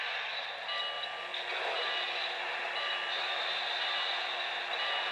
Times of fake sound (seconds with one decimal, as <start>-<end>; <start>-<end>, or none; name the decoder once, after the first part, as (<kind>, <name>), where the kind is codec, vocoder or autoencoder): none